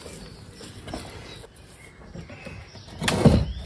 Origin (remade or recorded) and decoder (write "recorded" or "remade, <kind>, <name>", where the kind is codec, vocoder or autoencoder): recorded